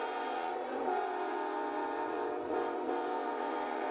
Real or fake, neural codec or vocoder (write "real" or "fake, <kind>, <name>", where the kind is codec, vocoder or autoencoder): fake, vocoder, Vocos